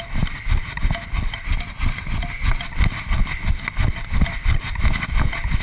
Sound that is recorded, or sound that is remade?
recorded